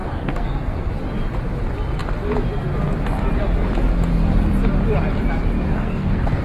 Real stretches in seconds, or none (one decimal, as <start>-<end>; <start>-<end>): 0.9-5.7